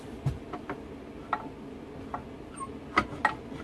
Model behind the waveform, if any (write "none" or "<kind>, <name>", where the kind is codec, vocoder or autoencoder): none